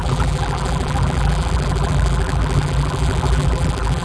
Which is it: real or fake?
fake